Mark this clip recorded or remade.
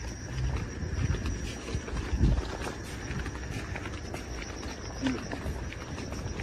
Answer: recorded